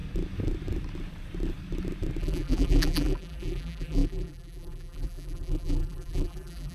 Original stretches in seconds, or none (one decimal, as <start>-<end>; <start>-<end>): 0.0-2.2